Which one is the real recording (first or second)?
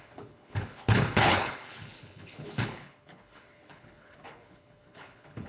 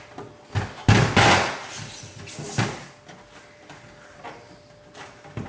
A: second